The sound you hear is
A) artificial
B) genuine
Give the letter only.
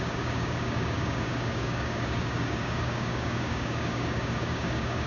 A